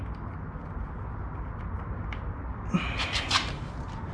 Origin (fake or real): real